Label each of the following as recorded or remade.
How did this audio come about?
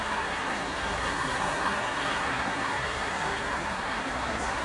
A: remade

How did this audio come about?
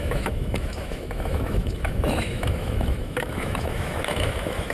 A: remade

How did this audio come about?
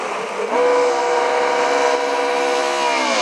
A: recorded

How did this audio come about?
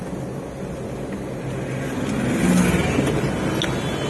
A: recorded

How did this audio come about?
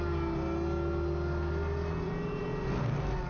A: recorded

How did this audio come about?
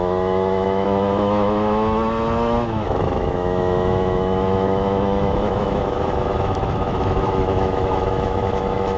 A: remade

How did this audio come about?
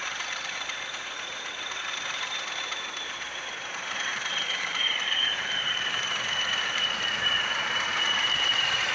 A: remade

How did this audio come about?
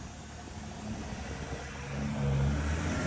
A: recorded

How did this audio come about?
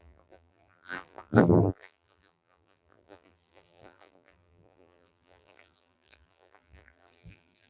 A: remade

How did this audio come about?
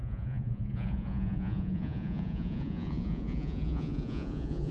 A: remade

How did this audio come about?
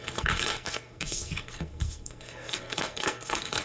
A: remade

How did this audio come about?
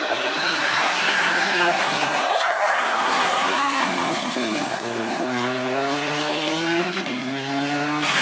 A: remade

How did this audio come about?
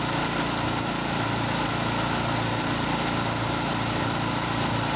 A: recorded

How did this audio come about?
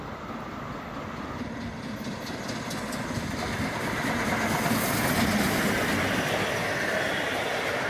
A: recorded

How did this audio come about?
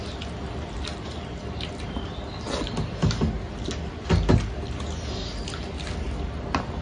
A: recorded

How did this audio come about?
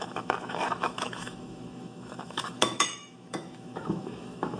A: remade